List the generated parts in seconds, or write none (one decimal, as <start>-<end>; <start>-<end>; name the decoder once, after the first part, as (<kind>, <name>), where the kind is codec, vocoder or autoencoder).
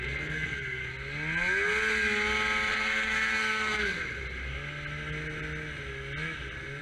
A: 0.0-0.8 (codec, SNAC); 2.7-4.0